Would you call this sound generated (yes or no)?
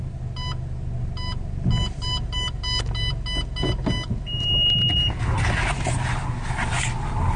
no